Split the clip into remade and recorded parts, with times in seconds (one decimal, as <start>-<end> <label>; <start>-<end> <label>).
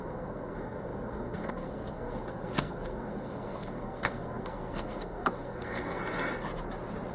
0.0-6.0 remade; 6.0-7.1 recorded